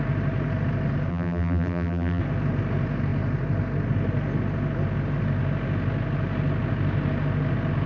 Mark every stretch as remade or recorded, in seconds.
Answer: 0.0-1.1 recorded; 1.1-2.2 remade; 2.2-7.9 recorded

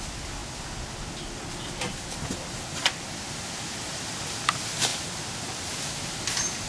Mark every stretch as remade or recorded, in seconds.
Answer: 0.0-6.7 recorded

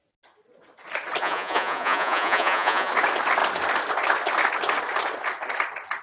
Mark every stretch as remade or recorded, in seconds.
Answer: 0.0-1.2 recorded; 1.2-2.9 remade; 2.9-6.0 recorded

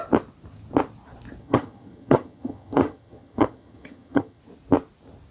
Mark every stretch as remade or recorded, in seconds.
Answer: 0.0-1.4 recorded; 1.4-4.4 remade; 4.4-5.3 recorded

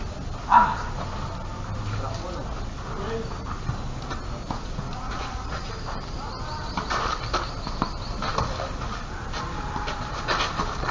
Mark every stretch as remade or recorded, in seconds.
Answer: 0.0-4.4 recorded; 4.4-5.7 remade; 5.7-10.9 recorded

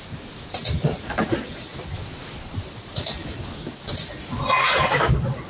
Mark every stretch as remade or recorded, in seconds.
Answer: 0.0-5.5 recorded